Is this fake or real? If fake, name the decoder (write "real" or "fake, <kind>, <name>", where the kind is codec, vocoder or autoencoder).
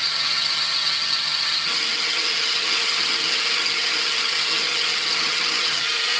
fake, vocoder, HiFi-GAN